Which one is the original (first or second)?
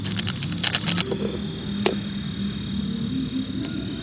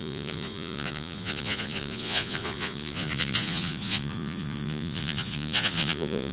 first